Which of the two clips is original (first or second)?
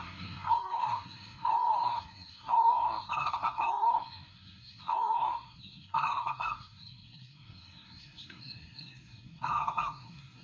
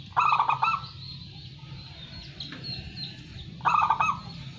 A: second